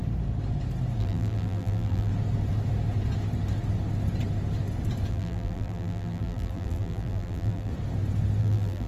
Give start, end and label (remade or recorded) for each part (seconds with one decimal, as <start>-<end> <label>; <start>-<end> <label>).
0.0-1.0 recorded; 1.0-2.1 remade; 2.1-5.1 recorded; 5.1-7.7 remade; 7.7-8.4 recorded; 8.4-8.9 remade